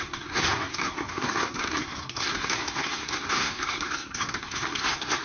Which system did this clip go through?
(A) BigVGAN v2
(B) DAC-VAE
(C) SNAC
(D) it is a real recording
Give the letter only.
C